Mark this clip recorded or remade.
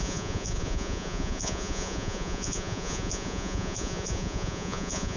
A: remade